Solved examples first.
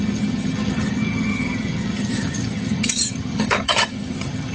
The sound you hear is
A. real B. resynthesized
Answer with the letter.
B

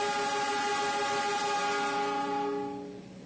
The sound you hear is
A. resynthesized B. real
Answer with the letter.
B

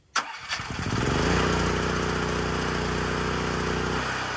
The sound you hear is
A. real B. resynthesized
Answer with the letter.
A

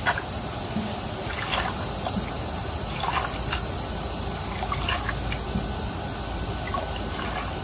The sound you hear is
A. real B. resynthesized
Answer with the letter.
A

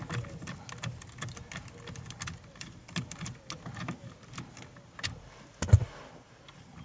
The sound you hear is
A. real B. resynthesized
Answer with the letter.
A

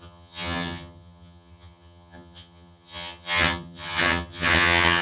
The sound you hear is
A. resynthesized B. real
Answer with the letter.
A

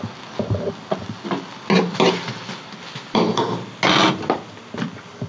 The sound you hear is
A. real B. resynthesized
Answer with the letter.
A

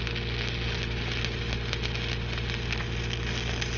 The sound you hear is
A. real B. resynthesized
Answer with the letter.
A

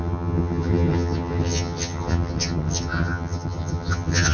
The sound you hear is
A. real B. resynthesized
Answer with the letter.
B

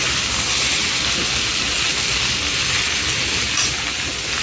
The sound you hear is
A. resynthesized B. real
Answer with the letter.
B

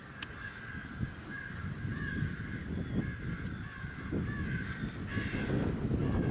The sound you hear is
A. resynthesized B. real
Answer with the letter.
B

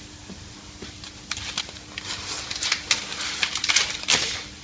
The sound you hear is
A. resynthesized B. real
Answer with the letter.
B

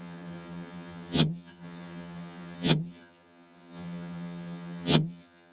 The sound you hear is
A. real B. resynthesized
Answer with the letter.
B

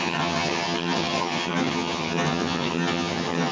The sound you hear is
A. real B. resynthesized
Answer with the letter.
B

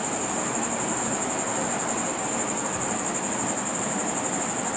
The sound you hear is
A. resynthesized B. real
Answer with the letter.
B